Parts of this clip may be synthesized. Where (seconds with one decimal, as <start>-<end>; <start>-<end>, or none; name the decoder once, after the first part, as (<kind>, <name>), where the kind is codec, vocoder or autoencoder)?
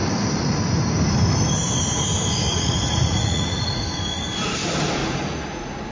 2.5-3.8 (vocoder, Vocos); 5.0-5.9